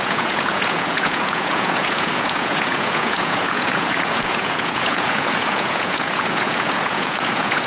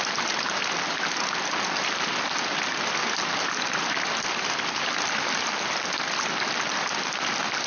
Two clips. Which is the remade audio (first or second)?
first